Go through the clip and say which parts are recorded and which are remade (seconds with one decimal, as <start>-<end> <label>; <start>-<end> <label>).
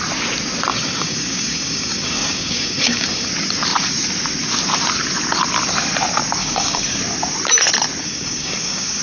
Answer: 0.0-0.7 recorded; 0.7-3.3 remade; 3.3-6.4 recorded; 6.4-7.0 remade; 7.0-8.0 recorded; 8.0-9.0 remade